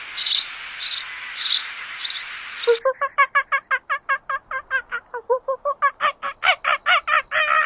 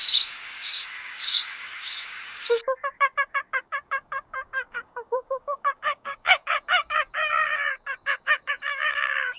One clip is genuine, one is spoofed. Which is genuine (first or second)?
first